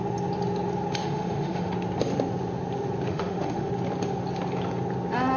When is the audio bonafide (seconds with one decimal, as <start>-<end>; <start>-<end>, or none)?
0.0-1.0; 1.7-3.1; 3.7-5.4